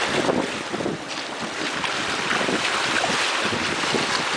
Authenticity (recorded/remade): recorded